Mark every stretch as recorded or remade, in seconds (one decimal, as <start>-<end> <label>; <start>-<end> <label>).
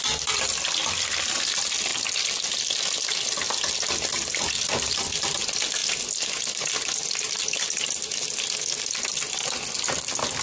0.0-10.4 recorded